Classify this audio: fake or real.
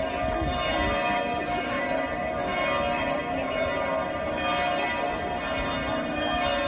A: real